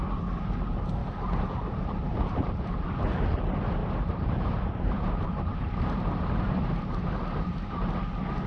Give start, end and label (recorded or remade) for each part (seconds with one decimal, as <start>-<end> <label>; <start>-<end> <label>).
0.0-1.0 recorded; 1.0-2.9 remade; 2.9-3.8 recorded; 3.8-6.8 remade; 6.8-8.5 recorded